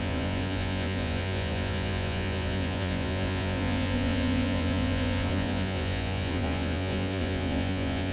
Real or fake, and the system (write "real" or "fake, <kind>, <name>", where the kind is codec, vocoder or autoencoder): fake, vocoder, Vocos